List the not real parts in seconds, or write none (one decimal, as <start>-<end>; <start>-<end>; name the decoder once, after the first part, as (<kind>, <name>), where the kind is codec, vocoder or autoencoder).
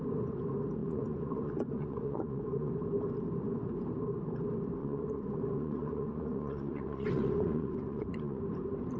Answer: 0.8-2.7 (vocoder, Vocos); 4.8-8.4